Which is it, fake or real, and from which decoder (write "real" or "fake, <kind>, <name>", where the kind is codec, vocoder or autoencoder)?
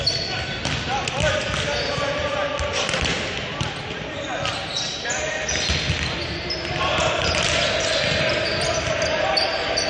real